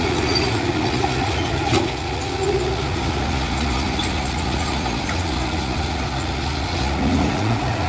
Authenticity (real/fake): fake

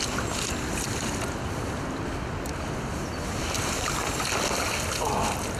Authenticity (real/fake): real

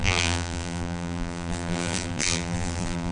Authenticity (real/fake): fake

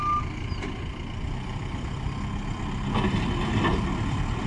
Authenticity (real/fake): real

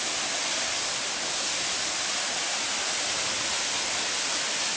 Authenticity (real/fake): real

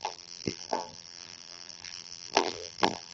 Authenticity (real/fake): fake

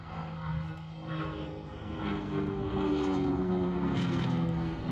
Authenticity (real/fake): fake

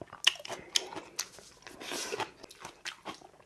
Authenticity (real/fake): real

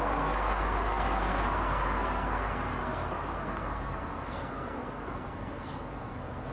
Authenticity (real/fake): fake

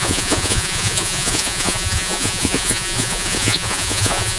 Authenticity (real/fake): fake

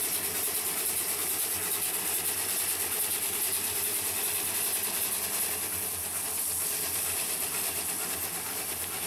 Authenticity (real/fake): fake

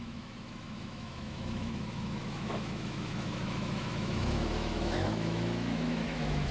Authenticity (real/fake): fake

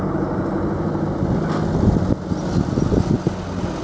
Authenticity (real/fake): real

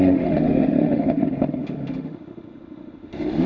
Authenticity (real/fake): fake